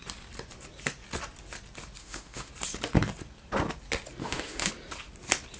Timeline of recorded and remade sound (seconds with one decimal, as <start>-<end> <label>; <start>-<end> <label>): 0.0-2.0 recorded; 2.0-2.5 remade; 2.5-4.2 recorded; 4.2-4.7 remade; 4.7-5.6 recorded